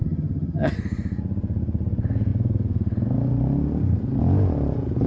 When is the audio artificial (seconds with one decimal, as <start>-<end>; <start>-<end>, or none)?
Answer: 0.0-0.7